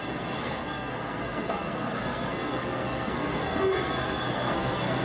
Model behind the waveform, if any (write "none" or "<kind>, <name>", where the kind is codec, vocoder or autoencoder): codec, SNAC